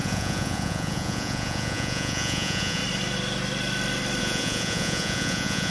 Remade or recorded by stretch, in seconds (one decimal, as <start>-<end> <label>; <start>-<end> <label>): 0.0-2.8 remade; 2.8-4.2 recorded; 4.2-5.7 remade